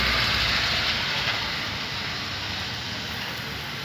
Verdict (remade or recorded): recorded